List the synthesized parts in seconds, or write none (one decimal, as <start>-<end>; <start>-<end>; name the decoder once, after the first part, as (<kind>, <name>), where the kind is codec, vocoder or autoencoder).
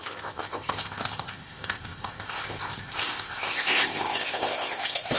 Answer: 0.0-5.2 (codec, ZipCodec)